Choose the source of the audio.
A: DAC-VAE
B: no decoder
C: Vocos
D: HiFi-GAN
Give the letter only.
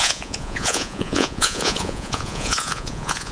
C